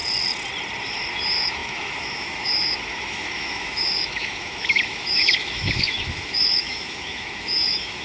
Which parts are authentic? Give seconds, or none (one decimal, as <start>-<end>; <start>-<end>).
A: 0.0-1.1